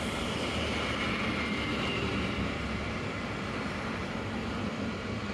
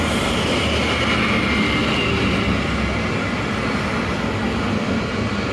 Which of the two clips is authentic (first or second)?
second